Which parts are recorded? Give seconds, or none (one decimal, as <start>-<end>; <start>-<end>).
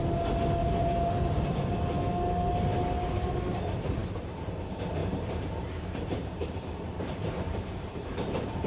0.0-0.6; 1.5-5.0; 8.1-8.7